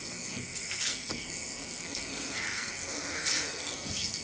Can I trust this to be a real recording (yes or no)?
no